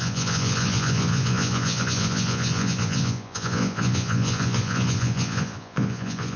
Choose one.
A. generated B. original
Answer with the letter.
A